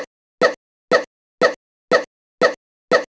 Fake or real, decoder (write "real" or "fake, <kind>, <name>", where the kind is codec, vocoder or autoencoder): real